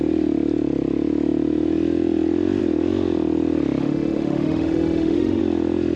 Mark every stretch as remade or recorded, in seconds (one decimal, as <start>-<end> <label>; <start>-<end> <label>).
0.0-3.8 recorded; 3.8-5.4 remade; 5.4-6.0 recorded